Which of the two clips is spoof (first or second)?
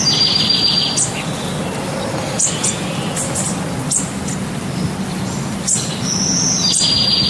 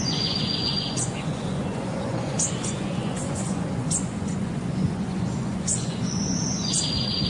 second